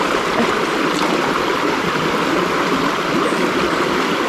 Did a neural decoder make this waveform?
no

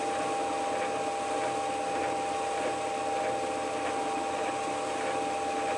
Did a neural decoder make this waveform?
no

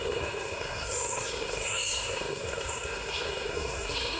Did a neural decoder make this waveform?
yes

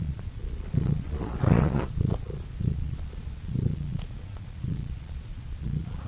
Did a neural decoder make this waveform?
yes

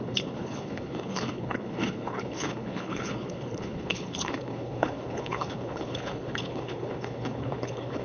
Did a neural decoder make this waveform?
yes